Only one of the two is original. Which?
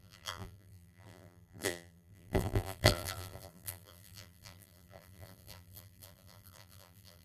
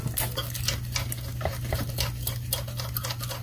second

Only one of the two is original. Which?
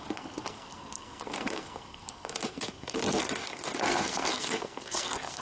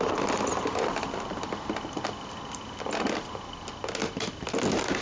second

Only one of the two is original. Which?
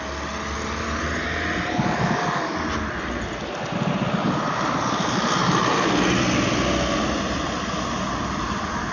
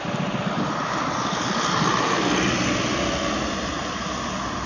first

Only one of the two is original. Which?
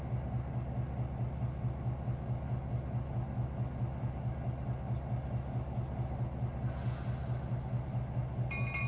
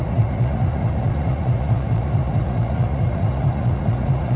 first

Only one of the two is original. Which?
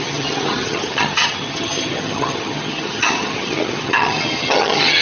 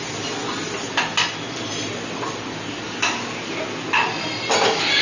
second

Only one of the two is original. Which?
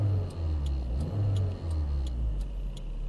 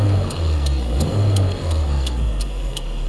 first